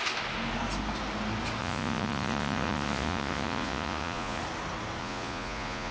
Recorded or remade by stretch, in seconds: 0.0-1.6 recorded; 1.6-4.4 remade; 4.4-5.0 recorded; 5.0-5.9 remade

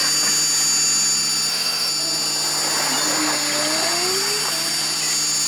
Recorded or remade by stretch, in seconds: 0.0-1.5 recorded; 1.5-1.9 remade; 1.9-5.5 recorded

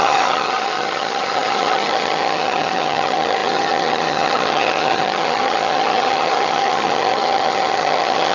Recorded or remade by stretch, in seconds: 0.0-8.3 remade